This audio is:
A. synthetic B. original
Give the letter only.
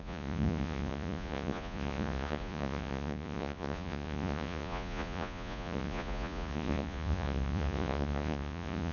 A